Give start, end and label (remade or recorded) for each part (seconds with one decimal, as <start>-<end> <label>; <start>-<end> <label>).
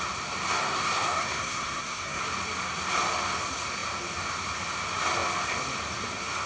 0.0-0.6 recorded; 0.6-2.2 remade; 2.2-6.5 recorded